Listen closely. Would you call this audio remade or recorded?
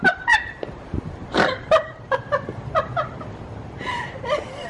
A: remade